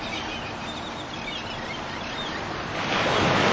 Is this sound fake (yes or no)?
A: no